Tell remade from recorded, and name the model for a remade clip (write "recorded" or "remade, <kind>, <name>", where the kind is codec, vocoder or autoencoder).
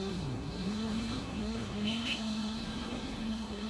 remade, codec, SNAC